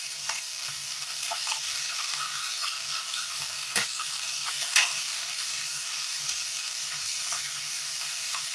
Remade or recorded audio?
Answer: remade